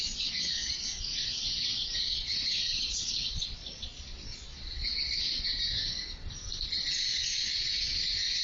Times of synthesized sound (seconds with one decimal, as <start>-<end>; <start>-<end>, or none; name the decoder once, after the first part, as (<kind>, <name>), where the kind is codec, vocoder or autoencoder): 0.0-5.5 (vocoder, Vocos); 6.9-8.4